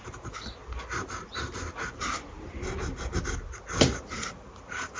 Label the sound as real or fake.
real